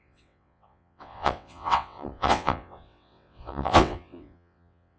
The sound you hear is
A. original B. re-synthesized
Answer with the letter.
B